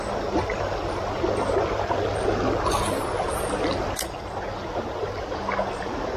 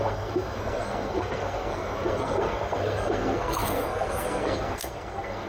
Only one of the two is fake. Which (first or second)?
second